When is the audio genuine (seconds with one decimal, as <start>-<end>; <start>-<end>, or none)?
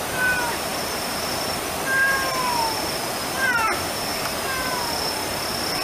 0.0-0.7; 4.2-5.8